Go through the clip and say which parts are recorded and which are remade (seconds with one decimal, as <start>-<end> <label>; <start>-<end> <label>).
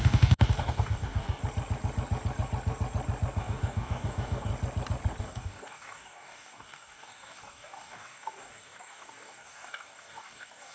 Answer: 0.0-1.4 remade; 1.4-3.4 recorded; 3.4-4.5 remade; 4.5-5.2 recorded; 5.2-10.7 remade